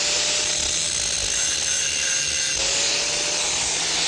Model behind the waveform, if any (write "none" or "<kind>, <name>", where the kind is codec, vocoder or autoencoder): none